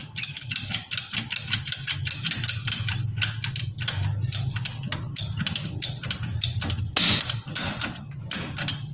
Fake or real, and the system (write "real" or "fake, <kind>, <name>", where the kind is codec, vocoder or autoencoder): real